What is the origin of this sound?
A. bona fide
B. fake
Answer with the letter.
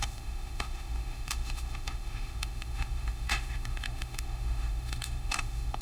B